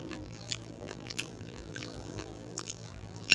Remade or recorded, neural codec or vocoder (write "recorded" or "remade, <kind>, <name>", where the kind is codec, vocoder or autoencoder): remade, vocoder, BigVGAN v2